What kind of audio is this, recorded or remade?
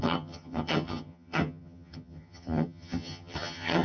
remade